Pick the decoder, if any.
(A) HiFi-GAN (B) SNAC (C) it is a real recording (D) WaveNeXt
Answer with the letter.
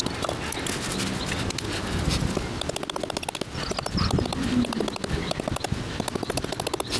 C